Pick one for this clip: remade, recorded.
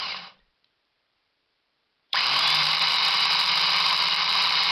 remade